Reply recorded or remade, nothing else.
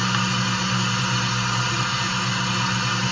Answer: recorded